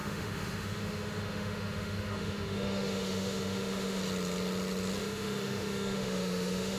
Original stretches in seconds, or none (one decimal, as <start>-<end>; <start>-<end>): 4.0-5.0